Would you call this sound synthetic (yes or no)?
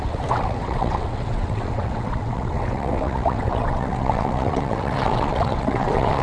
yes